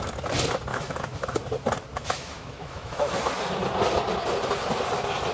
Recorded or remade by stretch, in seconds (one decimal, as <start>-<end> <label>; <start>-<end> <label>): 0.0-0.7 recorded; 0.7-1.4 remade; 1.4-1.9 recorded; 1.9-3.2 remade; 3.2-5.3 recorded